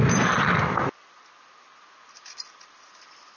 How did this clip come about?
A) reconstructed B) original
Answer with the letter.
B